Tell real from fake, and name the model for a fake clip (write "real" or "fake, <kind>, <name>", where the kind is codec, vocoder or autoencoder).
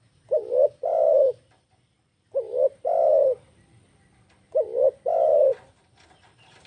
real